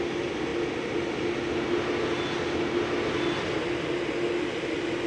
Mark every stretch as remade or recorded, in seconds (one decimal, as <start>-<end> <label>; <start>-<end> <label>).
0.0-5.1 recorded

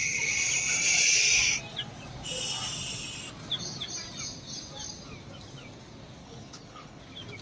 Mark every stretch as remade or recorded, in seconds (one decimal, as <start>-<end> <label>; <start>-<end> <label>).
0.0-6.2 recorded; 6.2-7.0 remade; 7.0-7.4 recorded

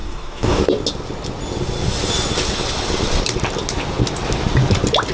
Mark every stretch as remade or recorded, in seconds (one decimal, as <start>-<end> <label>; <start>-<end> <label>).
0.0-0.6 remade; 0.6-5.1 recorded

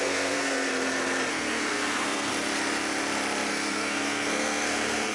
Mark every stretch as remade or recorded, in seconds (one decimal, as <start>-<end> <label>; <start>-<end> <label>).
0.0-0.7 remade; 0.7-1.3 recorded; 1.3-2.3 remade; 2.3-3.5 recorded; 3.5-5.1 remade